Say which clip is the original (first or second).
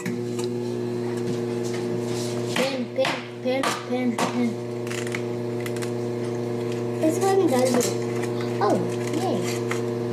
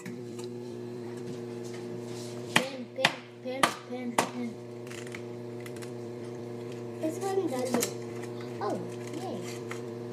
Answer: first